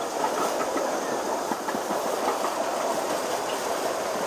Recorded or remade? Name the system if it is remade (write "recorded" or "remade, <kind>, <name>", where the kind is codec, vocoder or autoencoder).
remade, vocoder, BigVGAN v2